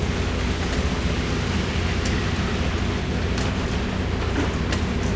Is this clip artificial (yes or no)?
no